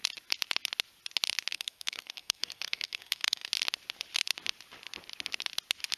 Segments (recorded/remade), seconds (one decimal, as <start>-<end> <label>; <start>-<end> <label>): 0.0-1.5 recorded; 1.5-3.5 remade; 3.5-6.0 recorded